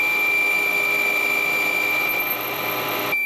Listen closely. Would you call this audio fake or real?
real